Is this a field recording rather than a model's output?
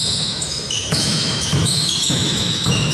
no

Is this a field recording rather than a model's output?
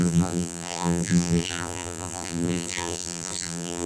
no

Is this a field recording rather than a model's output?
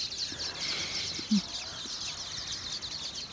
yes